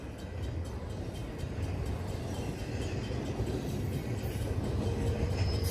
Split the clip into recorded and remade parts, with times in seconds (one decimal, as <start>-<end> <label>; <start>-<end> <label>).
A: 0.0-5.7 remade